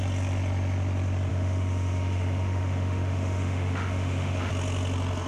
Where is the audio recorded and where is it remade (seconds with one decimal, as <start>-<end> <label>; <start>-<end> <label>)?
0.0-1.3 recorded; 1.3-4.5 remade; 4.5-5.3 recorded